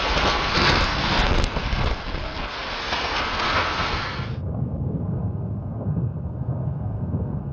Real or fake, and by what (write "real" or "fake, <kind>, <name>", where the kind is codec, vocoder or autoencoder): fake, codec, SNAC